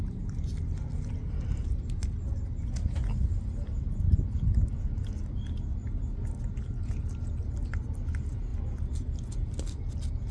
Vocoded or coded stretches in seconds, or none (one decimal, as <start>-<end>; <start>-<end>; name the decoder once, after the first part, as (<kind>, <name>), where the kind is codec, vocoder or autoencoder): none